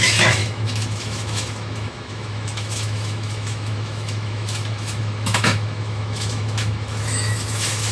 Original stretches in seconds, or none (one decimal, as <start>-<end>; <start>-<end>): none